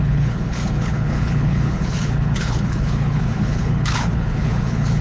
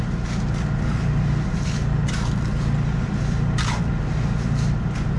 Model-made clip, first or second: first